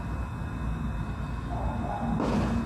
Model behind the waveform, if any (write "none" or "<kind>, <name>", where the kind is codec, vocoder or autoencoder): none